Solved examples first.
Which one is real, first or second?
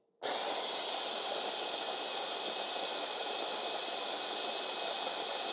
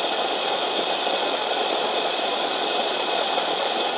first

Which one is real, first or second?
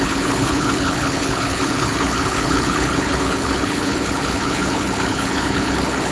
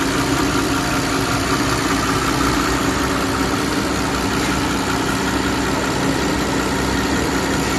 second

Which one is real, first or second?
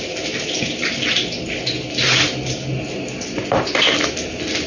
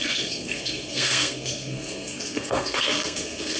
first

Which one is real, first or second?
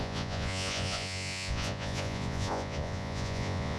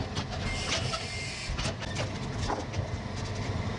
second